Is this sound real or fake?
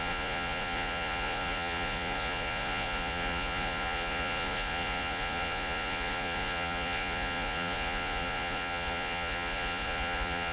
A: fake